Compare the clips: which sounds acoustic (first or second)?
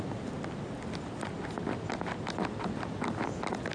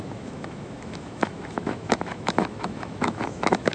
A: first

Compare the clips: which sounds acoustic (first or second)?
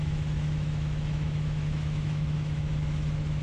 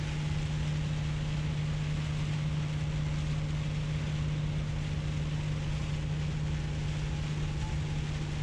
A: second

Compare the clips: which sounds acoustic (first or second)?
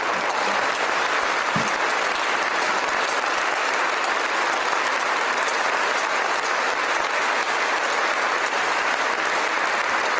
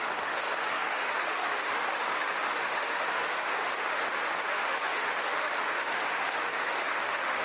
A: first